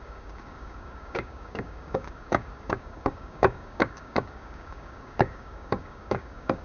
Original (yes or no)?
no